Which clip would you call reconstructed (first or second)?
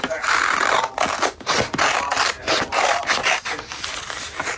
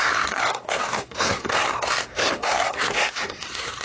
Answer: second